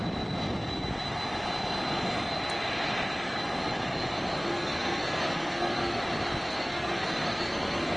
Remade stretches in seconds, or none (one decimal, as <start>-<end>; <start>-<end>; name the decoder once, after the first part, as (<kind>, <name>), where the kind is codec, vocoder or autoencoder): 4.5-6.0 (codec, SNAC); 6.5-8.0